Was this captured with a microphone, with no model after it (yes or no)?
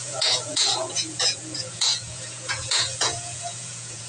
no